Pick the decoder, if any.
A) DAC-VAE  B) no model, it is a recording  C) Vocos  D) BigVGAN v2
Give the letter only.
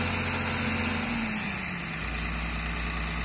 B